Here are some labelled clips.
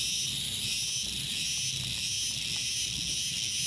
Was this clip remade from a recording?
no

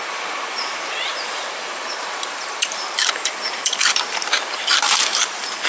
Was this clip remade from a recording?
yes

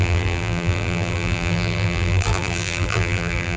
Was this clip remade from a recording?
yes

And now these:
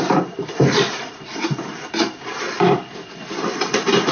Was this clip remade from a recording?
yes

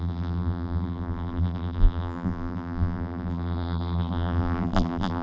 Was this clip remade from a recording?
yes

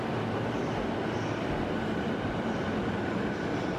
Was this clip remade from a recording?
no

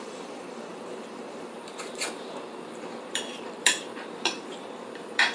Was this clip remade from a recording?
yes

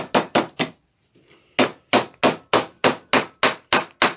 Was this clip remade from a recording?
no